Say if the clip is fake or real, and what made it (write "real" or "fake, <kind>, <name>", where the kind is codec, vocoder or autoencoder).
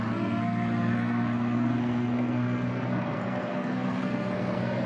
fake, codec, SNAC